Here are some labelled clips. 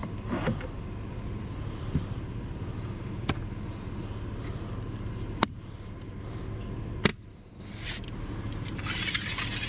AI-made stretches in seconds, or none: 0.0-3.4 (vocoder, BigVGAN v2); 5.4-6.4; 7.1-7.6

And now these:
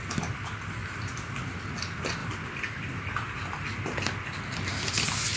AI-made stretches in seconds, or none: 2.2-4.4 (vocoder, BigVGAN v2)

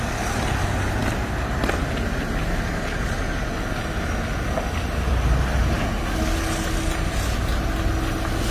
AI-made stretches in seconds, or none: none